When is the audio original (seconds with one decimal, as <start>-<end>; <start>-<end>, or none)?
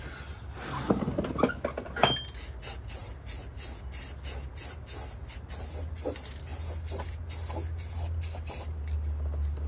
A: 0.0-9.7